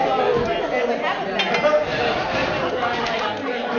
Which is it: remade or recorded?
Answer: recorded